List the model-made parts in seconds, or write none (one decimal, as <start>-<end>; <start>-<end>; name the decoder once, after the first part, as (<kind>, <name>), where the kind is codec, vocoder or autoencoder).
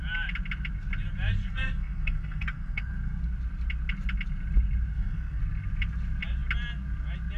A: 1.4-3.2 (codec, SNAC); 4.9-5.4